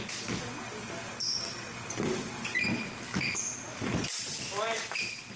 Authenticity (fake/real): real